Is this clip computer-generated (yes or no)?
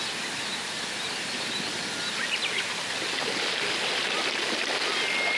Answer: no